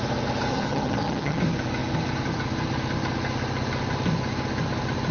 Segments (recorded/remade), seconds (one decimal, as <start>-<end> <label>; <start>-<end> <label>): 0.0-0.5 recorded; 0.5-1.4 remade; 1.4-5.1 recorded